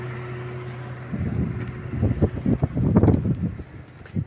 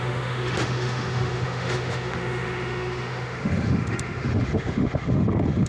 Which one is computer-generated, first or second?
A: second